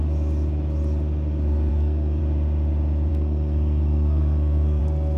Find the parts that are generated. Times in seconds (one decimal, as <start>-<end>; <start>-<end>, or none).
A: 1.7-2.2; 3.1-4.8